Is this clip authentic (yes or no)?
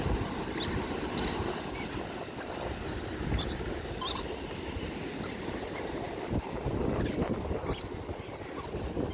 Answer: yes